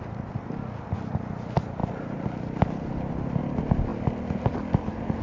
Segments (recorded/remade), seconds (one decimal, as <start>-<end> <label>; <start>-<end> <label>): 0.0-5.2 recorded